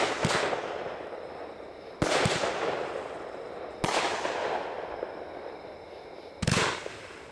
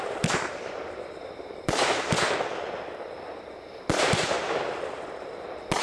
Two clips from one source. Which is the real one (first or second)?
first